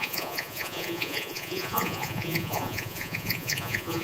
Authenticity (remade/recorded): remade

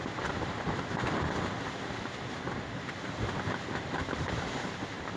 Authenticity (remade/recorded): recorded